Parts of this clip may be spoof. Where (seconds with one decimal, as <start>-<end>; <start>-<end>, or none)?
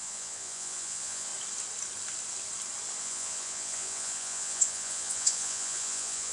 0.0-1.3; 3.0-6.3